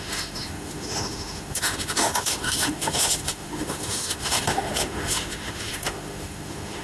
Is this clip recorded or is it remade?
remade